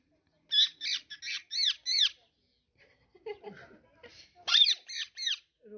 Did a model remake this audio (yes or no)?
no